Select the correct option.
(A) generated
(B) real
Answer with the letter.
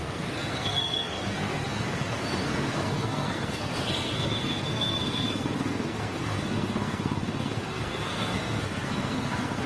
A